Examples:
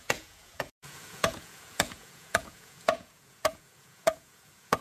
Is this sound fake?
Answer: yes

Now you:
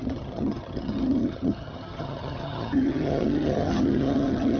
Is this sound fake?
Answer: yes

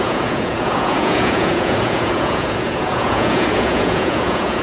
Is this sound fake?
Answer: yes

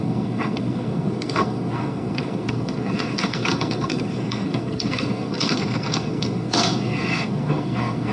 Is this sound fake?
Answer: yes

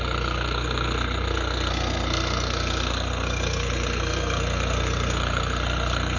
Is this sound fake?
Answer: yes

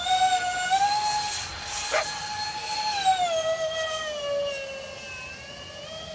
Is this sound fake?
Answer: no